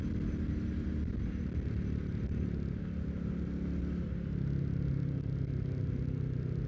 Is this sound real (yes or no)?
yes